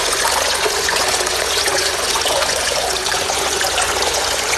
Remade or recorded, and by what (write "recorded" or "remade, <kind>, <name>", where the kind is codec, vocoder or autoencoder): remade, vocoder, Vocos